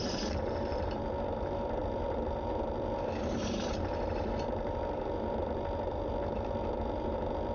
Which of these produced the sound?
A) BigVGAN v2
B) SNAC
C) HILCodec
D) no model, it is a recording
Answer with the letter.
A